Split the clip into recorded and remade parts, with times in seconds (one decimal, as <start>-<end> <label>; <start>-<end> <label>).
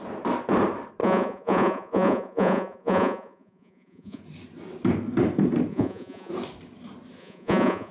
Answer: 0.0-1.0 recorded; 1.0-4.2 remade; 4.2-5.7 recorded; 5.7-6.3 remade; 6.3-7.2 recorded; 7.2-7.9 remade